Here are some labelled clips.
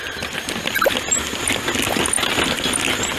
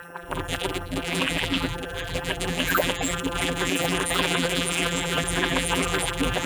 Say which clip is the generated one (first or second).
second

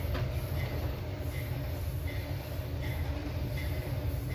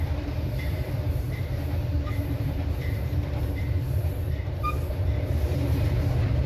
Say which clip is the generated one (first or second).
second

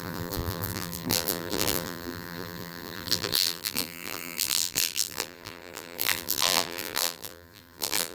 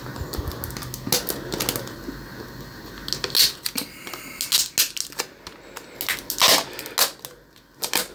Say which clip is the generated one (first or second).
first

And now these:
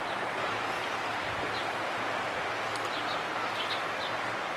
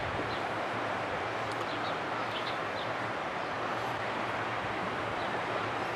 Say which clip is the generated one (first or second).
second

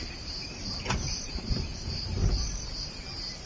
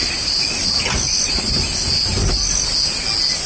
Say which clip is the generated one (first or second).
first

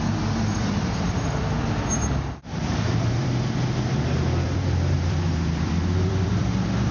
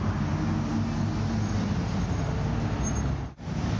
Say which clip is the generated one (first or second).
first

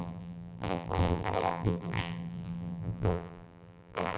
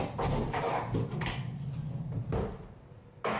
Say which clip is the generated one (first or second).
first